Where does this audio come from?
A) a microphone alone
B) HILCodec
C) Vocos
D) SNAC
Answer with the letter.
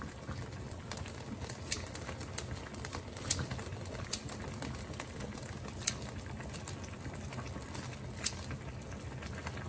A